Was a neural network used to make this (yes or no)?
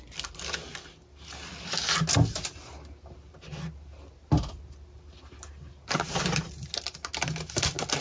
no